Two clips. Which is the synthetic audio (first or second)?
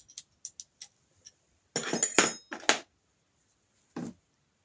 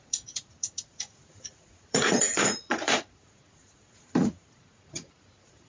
second